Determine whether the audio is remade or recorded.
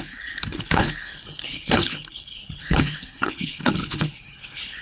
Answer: remade